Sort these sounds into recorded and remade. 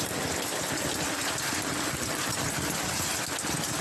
recorded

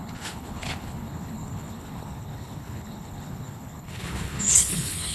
remade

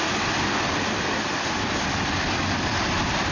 remade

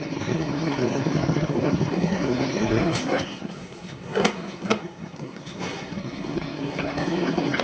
remade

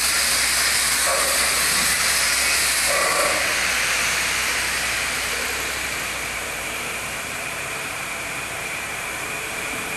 remade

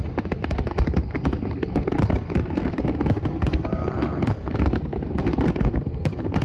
remade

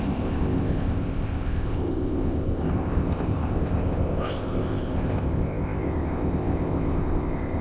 remade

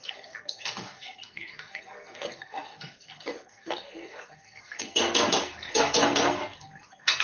remade